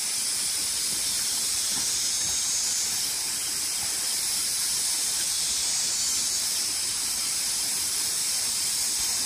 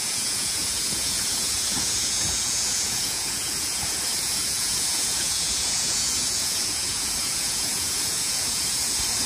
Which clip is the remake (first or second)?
second